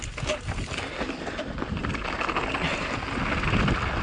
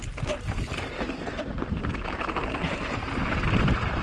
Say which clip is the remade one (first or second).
second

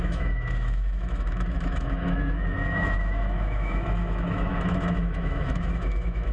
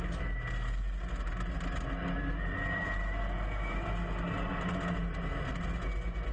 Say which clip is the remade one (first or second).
first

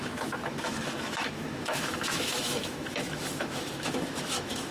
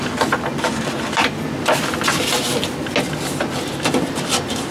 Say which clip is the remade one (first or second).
first